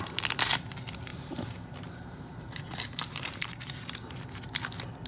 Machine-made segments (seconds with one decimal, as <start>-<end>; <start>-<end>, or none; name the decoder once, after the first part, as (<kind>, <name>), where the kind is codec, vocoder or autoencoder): 1.1-3.7 (vocoder, BigVGAN v2)